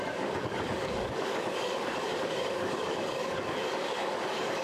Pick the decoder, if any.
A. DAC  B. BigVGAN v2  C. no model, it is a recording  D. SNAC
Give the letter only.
A